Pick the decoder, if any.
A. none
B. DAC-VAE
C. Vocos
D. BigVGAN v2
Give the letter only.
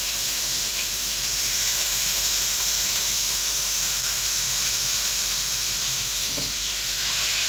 B